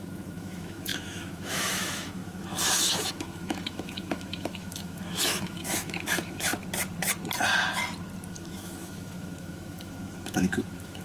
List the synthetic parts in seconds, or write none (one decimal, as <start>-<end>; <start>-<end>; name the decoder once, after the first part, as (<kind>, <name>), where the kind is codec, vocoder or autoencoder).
0.0-6.5 (autoencoder, DAC-VAE); 8.3-11.0